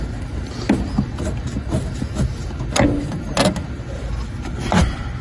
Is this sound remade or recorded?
recorded